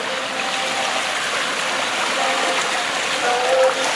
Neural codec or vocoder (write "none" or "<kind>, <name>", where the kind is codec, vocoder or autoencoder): none